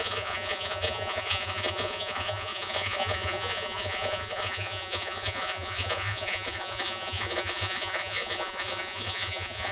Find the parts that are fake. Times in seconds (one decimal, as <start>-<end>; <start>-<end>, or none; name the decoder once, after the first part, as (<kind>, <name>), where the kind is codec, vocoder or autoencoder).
0.0-9.7 (vocoder, Vocos)